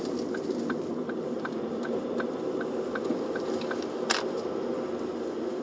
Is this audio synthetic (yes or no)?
no